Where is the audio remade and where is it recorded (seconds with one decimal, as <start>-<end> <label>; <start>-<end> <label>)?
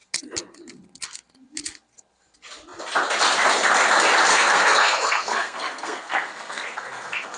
0.0-4.3 recorded; 4.3-7.4 remade